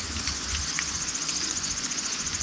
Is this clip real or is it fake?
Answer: fake